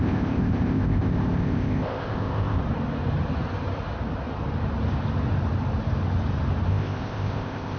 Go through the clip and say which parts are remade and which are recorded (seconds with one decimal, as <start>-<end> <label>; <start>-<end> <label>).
0.0-2.6 remade; 2.6-6.7 recorded; 6.7-7.8 remade